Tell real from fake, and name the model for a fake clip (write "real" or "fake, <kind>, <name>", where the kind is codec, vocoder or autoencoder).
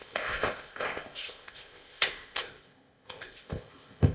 fake, codec, ZipCodec